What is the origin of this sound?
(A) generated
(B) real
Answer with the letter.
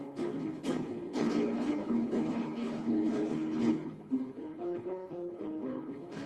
A